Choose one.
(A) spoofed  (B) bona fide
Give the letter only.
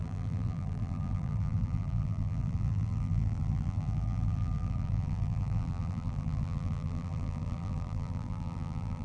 A